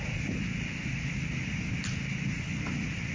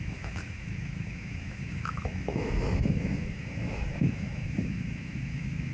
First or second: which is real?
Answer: first